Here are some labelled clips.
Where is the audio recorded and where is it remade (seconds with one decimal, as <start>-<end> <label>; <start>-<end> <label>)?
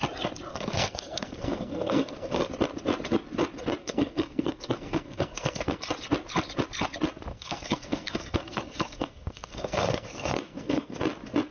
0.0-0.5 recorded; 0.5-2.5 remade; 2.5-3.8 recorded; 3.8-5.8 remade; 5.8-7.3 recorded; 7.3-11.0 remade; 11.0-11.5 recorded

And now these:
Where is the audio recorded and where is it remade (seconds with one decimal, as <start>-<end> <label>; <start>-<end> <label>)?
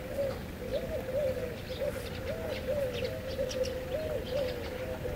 0.0-5.2 recorded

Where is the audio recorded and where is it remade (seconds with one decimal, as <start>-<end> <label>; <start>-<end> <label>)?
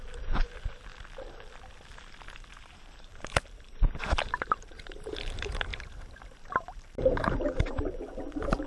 0.0-0.9 remade; 0.9-2.5 recorded; 2.5-8.7 remade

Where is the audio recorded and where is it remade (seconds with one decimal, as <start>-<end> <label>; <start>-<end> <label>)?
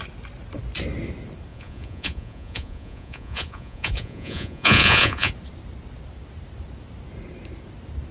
0.0-1.5 recorded; 1.5-5.3 remade; 5.3-8.1 recorded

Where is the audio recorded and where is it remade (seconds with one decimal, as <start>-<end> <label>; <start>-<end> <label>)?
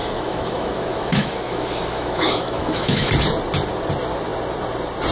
0.0-3.1 remade; 3.1-5.1 recorded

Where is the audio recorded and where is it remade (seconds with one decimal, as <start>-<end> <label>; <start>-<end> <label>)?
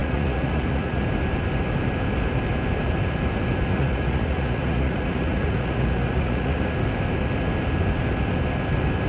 0.0-1.0 remade; 1.0-3.7 recorded; 3.7-6.6 remade; 6.6-9.1 recorded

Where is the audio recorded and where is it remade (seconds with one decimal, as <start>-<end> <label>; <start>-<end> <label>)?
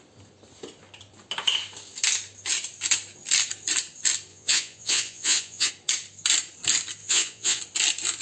0.0-4.3 recorded; 4.3-5.7 remade; 5.7-7.0 recorded; 7.0-7.6 remade; 7.6-8.2 recorded